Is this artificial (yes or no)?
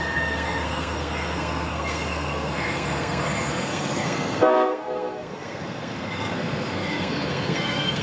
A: yes